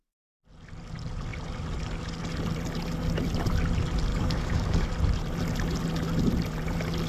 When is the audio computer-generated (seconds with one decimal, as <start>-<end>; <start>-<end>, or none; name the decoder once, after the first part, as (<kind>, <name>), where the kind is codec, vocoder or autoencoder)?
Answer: 4.1-4.9 (codec, DAC)